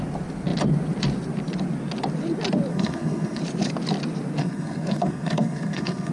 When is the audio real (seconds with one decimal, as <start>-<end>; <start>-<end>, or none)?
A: 0.0-2.7; 3.4-4.4